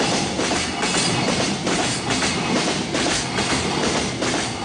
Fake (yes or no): no